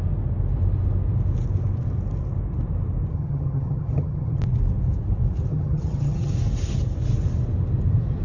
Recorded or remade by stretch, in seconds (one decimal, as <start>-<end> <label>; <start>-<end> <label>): 0.0-3.1 recorded; 3.1-4.4 remade; 4.4-5.5 recorded; 5.5-6.3 remade; 6.3-8.2 recorded